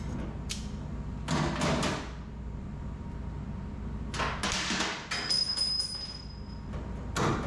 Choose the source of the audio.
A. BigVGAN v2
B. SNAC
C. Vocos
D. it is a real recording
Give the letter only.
D